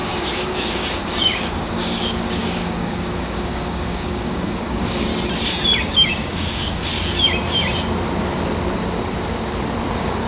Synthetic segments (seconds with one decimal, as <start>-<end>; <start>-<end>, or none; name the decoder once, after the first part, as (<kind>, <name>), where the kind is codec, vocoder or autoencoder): 0.0-5.1 (codec, DAC); 5.8-6.9; 9.9-10.3